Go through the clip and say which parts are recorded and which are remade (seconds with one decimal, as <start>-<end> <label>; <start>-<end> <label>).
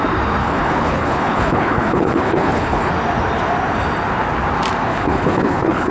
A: 0.0-0.4 recorded; 0.4-2.9 remade; 2.9-4.9 recorded; 4.9-5.9 remade